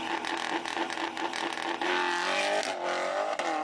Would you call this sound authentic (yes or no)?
yes